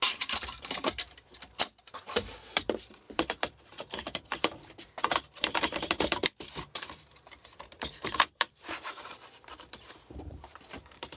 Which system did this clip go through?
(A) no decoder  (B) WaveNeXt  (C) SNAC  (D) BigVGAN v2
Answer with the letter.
D